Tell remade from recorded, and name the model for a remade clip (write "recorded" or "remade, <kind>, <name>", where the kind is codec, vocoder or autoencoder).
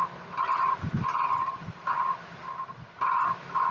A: recorded